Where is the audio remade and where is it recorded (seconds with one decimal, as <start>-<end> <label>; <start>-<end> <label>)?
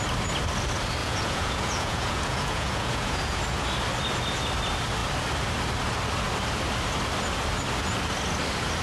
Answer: 0.0-1.0 recorded; 1.0-3.4 remade; 3.4-8.8 recorded